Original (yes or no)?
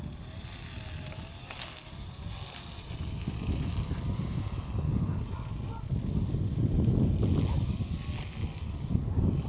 yes